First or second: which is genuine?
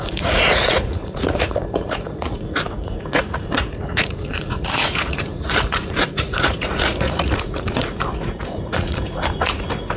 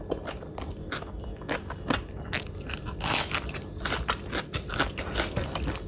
second